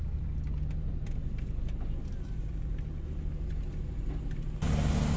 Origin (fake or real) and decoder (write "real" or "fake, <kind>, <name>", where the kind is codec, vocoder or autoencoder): real